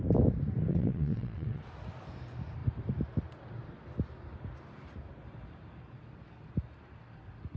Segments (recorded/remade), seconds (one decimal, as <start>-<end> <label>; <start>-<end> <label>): 0.0-0.7 recorded; 0.7-1.6 remade; 1.6-7.6 recorded